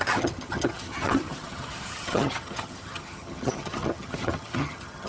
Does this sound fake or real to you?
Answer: fake